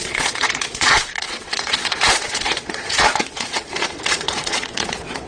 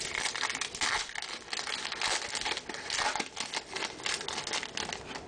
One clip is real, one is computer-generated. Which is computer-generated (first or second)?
first